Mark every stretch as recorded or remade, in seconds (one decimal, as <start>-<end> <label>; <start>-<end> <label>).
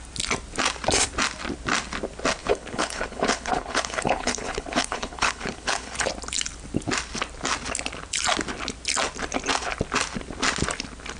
0.0-2.4 recorded; 2.4-6.1 remade; 6.1-11.2 recorded